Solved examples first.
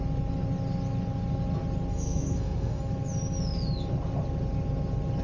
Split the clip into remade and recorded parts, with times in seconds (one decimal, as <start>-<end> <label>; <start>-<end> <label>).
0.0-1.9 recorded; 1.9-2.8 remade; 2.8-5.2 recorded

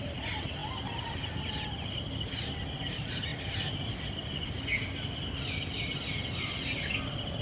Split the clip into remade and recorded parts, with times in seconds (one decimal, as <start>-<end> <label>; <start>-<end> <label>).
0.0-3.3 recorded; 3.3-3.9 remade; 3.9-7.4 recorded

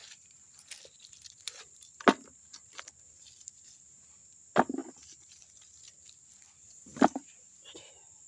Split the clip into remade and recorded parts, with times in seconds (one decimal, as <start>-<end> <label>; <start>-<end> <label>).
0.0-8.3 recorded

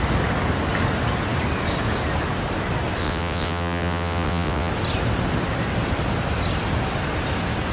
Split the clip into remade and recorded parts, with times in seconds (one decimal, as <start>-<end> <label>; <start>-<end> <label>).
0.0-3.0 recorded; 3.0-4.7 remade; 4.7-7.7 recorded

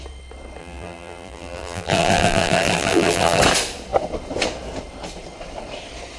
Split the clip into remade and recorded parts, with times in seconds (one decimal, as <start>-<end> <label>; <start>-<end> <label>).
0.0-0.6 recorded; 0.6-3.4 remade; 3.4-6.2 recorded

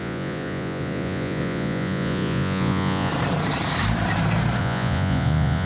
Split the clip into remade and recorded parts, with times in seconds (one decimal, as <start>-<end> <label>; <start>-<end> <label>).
0.0-3.1 remade; 3.1-4.6 recorded; 4.6-5.7 remade